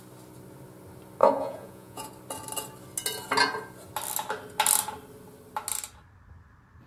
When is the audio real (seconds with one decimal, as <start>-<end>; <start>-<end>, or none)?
0.0-1.2; 2.1-6.9